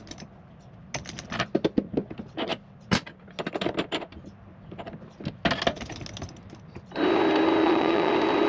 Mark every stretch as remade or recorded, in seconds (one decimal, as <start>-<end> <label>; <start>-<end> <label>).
0.0-7.6 recorded; 7.6-8.1 remade; 8.1-8.5 recorded